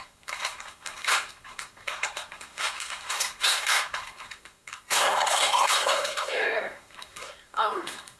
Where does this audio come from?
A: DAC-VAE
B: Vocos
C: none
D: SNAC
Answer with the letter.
D